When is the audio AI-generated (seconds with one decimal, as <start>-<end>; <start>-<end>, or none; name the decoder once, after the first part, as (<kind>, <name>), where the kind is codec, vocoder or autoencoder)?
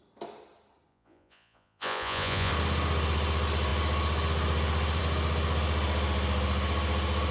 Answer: 0.9-2.5 (vocoder, Vocos)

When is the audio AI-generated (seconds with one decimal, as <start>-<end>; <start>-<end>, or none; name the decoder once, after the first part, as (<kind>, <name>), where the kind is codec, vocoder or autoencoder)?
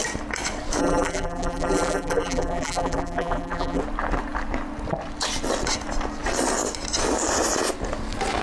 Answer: 0.8-3.8 (vocoder, BigVGAN v2)